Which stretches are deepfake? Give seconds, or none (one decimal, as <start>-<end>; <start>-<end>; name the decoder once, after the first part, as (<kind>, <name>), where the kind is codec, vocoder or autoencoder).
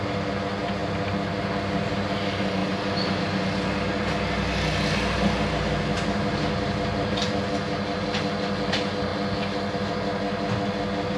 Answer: 2.6-5.5 (vocoder, BigVGAN v2)